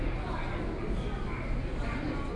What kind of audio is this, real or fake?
real